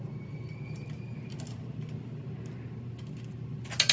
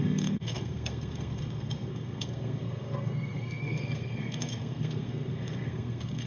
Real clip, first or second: first